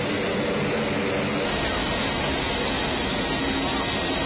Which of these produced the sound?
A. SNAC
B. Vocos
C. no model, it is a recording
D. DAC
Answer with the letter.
C